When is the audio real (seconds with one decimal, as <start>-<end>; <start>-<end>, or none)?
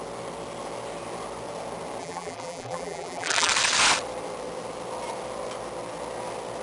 0.0-2.0; 3.5-6.6